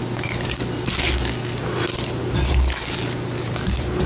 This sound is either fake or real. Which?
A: real